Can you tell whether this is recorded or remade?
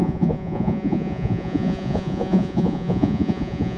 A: remade